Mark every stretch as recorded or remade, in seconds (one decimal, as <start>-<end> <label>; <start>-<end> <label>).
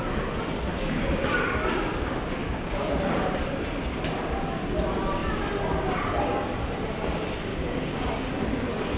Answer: 0.0-0.7 recorded; 0.7-1.2 remade; 1.2-2.4 recorded; 2.4-2.9 remade; 2.9-7.5 recorded; 7.5-8.3 remade; 8.3-9.0 recorded